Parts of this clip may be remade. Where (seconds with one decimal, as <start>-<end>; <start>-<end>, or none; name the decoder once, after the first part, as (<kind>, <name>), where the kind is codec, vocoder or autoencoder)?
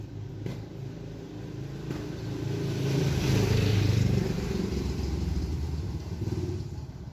3.7-5.4 (vocoder, BigVGAN v2)